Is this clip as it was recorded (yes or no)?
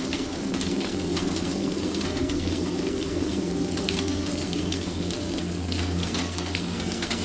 no